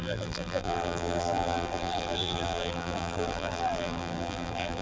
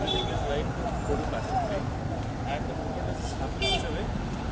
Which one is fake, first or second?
first